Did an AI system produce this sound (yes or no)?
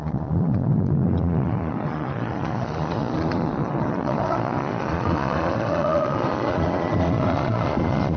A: yes